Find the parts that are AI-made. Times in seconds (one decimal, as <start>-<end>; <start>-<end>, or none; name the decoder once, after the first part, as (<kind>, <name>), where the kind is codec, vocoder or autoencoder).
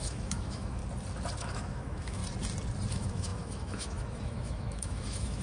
0.0-0.8 (autoencoder, DAC-VAE); 1.4-2.2; 2.9-5.4